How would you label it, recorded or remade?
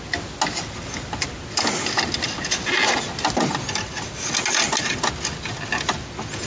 recorded